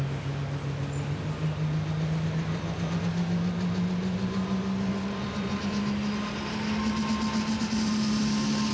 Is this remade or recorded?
recorded